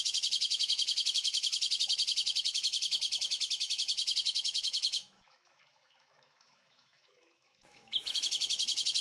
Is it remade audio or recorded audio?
remade